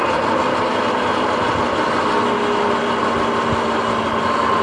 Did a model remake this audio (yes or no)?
no